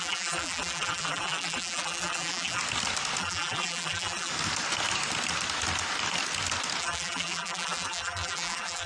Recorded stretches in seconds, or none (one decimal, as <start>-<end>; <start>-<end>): 2.6-3.2; 4.3-6.8

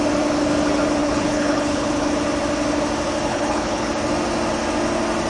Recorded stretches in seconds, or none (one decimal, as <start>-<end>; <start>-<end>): 0.0-1.0; 2.1-3.3; 3.9-5.3

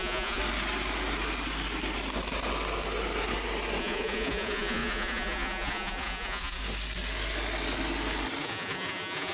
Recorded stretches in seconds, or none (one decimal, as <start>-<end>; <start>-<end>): 0.4-3.8; 6.6-8.4

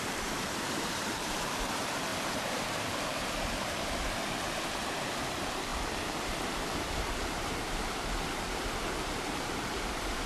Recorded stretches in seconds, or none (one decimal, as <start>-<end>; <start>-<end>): none

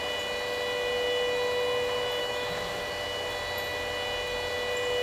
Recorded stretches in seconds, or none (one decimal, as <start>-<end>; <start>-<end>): 0.0-2.2; 2.8-5.0

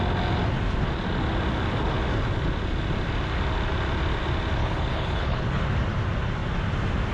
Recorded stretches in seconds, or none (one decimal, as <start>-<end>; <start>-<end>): 0.0-4.6; 5.6-7.1

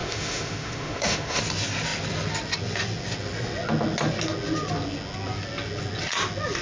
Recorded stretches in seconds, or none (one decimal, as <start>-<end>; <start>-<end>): 1.4-6.6